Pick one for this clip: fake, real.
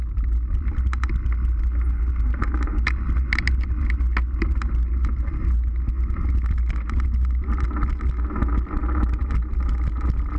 real